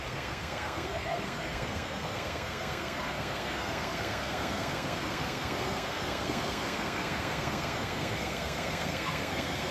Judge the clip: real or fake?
fake